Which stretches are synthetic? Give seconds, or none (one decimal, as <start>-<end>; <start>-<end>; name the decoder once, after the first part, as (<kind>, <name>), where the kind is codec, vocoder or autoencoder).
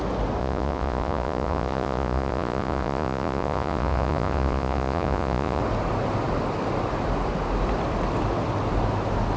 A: 0.4-5.6 (vocoder, Vocos)